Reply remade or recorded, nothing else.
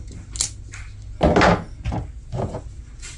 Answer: recorded